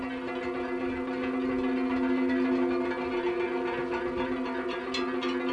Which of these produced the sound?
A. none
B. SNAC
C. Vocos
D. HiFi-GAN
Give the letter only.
A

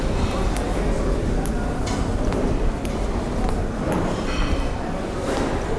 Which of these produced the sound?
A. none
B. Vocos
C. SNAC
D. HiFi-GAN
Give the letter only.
A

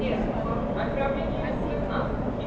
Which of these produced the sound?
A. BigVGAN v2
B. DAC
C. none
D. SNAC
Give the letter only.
C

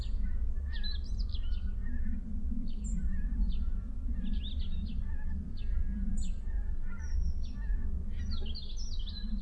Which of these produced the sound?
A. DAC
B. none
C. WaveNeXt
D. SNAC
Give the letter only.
B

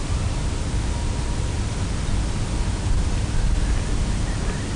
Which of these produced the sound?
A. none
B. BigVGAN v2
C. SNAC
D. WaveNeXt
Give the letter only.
A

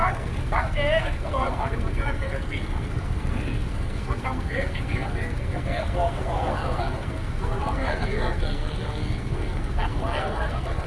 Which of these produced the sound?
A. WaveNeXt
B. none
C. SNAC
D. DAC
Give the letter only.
C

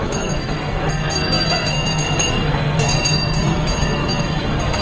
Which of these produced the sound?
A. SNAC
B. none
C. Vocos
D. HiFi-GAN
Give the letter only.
A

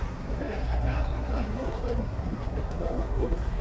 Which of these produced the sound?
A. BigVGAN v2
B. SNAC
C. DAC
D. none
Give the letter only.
B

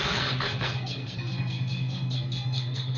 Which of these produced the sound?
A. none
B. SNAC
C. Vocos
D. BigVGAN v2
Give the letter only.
B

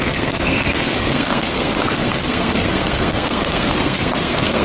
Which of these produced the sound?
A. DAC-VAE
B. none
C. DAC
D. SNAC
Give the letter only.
D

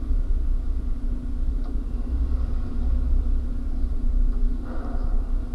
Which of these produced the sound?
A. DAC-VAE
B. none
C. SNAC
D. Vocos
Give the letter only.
B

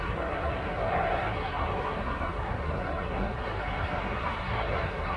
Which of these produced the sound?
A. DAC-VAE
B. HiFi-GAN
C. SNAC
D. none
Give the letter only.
C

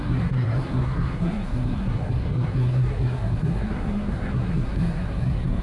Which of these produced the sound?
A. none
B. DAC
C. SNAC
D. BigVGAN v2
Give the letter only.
C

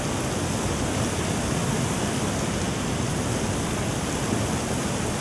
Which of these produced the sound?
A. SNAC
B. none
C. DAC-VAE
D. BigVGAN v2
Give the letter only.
B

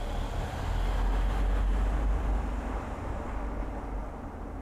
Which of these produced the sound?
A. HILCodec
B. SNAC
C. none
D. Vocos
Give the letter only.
C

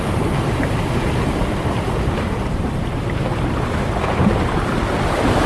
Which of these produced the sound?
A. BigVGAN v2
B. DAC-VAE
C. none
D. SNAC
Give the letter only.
C